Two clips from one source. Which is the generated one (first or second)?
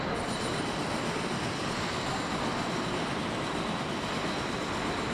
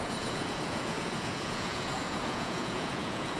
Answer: second